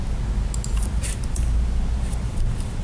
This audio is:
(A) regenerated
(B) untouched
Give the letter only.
B